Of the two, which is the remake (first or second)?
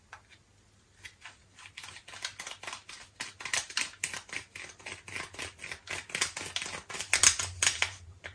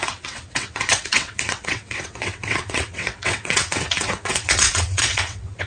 second